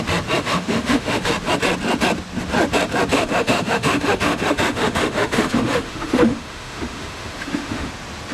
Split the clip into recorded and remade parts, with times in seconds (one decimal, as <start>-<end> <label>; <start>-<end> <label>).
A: 0.0-0.4 recorded; 0.4-1.3 remade; 1.3-3.1 recorded; 3.1-7.9 remade; 7.9-8.3 recorded